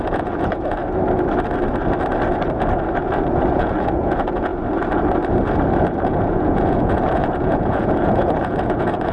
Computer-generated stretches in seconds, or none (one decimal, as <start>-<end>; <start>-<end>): 0.0-0.8; 3.5-4.5; 6.0-9.1